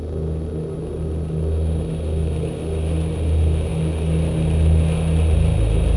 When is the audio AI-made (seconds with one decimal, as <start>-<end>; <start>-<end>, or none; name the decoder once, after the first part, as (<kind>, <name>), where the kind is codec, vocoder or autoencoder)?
none